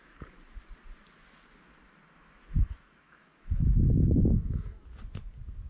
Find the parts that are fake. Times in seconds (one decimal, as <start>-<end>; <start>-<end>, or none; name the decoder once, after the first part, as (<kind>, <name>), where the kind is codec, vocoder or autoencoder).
2.2-4.8 (autoencoder, DAC-VAE)